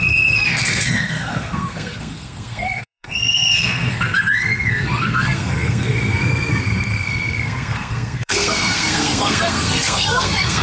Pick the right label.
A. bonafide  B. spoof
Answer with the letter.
B